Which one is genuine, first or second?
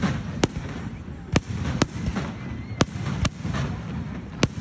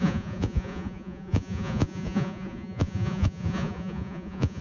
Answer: first